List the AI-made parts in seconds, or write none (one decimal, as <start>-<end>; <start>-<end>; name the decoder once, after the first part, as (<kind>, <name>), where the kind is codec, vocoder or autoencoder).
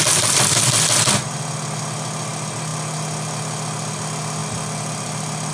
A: none